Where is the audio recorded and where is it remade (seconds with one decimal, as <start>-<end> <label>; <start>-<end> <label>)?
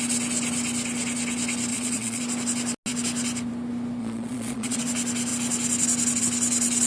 0.0-1.7 recorded; 1.7-2.2 remade; 2.2-4.0 recorded; 4.0-4.8 remade; 4.8-6.9 recorded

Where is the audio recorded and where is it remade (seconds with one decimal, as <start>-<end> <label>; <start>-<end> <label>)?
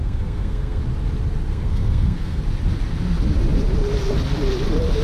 0.0-0.8 remade; 0.8-1.5 recorded; 1.5-2.4 remade; 2.4-5.0 recorded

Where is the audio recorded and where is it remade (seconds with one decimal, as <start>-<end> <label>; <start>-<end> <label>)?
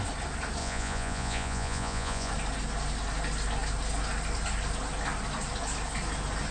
0.0-0.6 recorded; 0.6-2.3 remade; 2.3-6.5 recorded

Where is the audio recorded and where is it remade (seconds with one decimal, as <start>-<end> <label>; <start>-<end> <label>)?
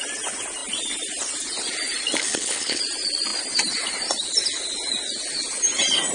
0.0-2.2 recorded; 2.2-2.8 remade; 2.8-6.1 recorded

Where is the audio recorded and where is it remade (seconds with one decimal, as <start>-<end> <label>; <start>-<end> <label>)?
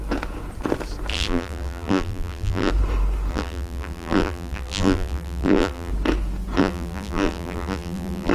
0.0-1.1 recorded; 1.1-2.7 remade; 2.7-3.3 recorded; 3.3-5.9 remade; 5.9-6.6 recorded; 6.6-8.3 remade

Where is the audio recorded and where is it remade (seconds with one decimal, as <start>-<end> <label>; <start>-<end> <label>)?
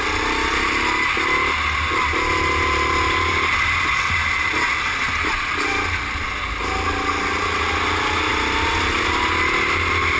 0.0-10.2 recorded